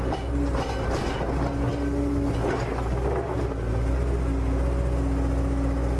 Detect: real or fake real